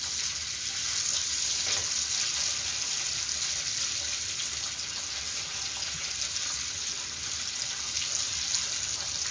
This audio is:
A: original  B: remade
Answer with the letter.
A